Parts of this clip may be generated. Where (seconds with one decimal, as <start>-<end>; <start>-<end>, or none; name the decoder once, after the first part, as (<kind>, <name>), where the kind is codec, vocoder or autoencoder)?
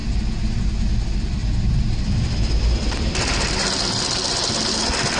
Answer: 1.4-4.5 (vocoder, BigVGAN v2)